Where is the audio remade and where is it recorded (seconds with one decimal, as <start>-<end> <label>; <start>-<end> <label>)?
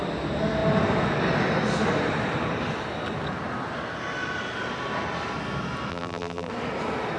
0.0-5.9 recorded; 5.9-6.5 remade; 6.5-7.2 recorded